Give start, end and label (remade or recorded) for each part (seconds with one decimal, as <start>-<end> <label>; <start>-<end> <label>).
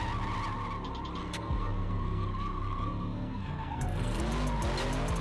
0.0-1.2 recorded; 1.2-4.2 remade; 4.2-5.2 recorded